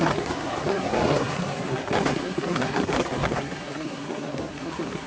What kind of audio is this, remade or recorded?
remade